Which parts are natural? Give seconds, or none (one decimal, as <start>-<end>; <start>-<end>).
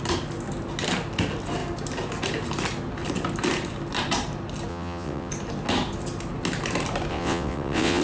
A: 0.0-4.7; 5.3-7.1